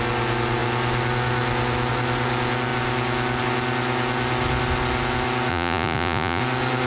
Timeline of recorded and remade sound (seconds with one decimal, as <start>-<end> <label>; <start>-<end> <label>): 0.0-5.5 recorded; 5.5-6.4 remade; 6.4-6.9 recorded